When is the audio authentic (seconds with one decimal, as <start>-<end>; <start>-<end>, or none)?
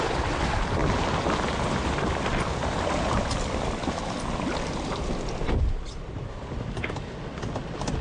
0.0-8.0